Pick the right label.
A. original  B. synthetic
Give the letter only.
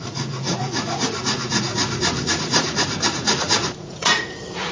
B